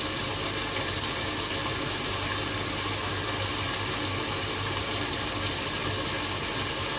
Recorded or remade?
recorded